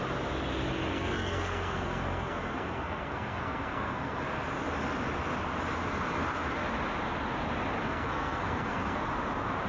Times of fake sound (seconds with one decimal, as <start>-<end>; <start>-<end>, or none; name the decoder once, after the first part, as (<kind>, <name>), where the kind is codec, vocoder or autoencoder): 0.9-4.2 (codec, SNAC); 7.8-9.0